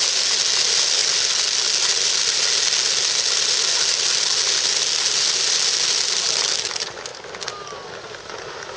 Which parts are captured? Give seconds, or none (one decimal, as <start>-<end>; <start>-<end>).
0.0-8.8